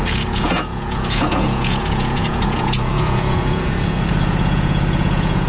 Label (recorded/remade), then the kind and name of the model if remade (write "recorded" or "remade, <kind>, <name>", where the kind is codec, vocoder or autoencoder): remade, vocoder, Vocos